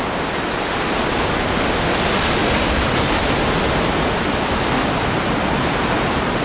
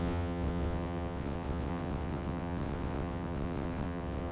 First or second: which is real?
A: first